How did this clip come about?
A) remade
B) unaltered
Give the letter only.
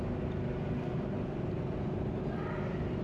B